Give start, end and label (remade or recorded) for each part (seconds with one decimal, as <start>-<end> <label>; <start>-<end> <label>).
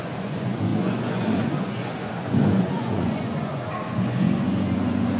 0.0-5.2 remade